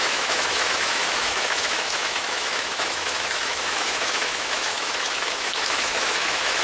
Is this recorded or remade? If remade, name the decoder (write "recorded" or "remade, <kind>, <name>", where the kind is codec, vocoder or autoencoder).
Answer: remade, autoencoder, DAC-VAE